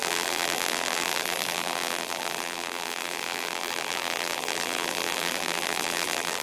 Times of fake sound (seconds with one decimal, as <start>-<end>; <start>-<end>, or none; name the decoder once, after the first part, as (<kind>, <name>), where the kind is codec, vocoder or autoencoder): 0.0-6.4 (vocoder, BigVGAN v2)